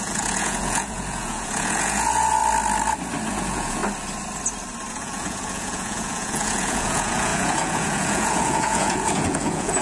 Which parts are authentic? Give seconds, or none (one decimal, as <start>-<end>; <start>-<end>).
2.4-3.3; 3.8-4.9